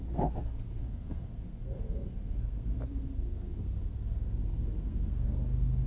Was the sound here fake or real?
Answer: fake